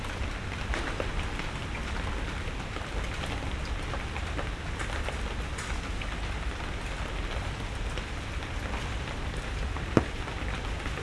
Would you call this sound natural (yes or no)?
yes